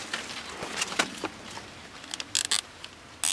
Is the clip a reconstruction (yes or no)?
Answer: no